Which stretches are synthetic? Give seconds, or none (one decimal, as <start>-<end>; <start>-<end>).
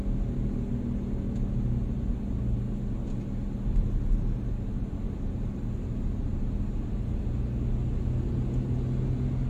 none